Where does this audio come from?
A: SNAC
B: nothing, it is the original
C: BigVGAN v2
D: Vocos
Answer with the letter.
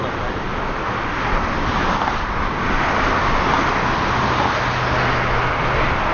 B